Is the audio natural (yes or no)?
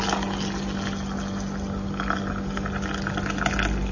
yes